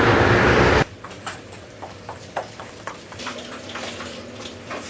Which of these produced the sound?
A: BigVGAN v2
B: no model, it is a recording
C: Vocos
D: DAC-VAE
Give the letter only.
A